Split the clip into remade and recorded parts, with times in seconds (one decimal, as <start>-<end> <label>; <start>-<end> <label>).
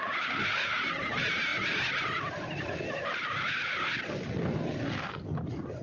0.0-5.8 recorded